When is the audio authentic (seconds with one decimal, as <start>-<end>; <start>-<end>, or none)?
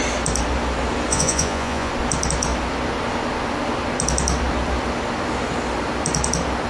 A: 0.0-1.1; 1.9-6.7